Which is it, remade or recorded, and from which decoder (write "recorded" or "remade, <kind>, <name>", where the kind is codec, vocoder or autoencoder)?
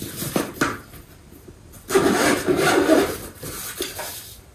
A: recorded